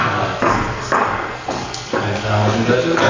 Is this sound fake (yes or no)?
yes